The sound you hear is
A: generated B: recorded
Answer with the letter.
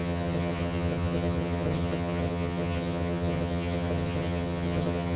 A